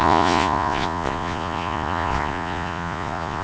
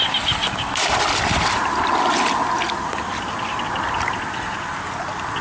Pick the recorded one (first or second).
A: second